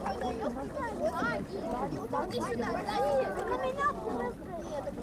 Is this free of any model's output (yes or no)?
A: yes